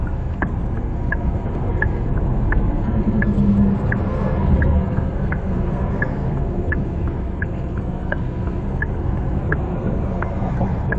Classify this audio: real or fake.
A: fake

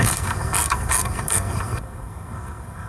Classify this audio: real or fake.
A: fake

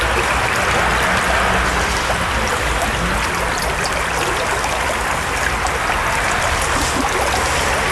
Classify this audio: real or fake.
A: real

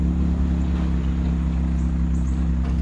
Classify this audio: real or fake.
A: real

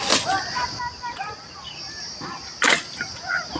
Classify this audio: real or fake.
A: real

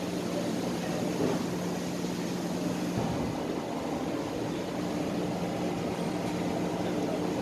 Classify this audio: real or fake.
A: real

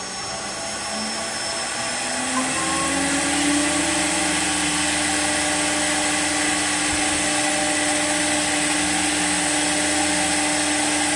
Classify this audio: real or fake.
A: real